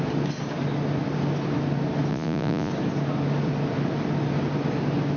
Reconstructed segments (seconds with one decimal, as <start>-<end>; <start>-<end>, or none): 2.1-2.7